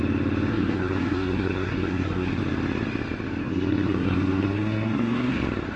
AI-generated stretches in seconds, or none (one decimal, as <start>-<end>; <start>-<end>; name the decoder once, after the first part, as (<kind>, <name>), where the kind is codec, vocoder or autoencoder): 0.5-2.4 (codec, SNAC); 3.4-5.3